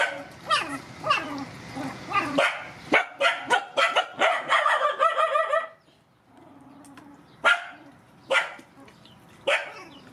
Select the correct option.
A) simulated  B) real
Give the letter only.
B